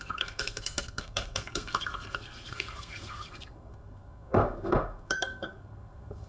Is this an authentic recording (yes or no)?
no